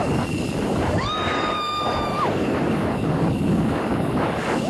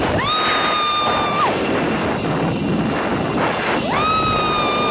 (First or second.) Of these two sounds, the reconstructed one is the first